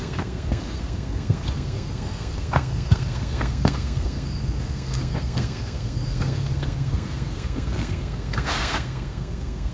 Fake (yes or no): yes